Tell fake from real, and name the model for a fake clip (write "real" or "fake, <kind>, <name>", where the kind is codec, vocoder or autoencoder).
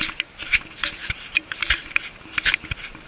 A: fake, vocoder, BigVGAN v2